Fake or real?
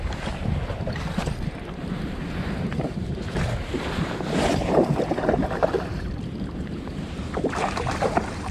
fake